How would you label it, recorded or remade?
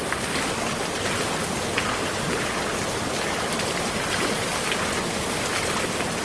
recorded